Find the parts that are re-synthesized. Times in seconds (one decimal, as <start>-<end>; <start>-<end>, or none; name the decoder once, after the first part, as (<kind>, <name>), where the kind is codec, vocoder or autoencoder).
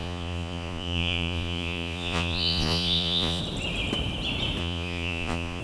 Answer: 0.0-3.4 (vocoder, Vocos); 4.6-5.6